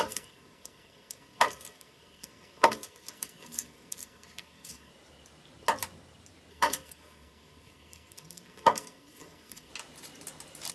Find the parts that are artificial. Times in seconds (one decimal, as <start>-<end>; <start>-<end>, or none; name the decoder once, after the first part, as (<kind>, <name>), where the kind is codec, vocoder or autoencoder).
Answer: 0.0-4.9 (codec, SNAC); 6.5-9.7